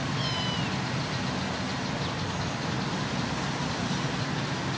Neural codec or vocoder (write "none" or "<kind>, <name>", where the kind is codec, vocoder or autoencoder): none